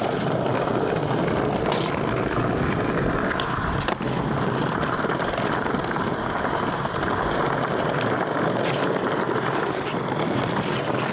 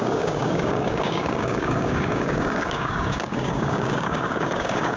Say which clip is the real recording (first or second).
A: first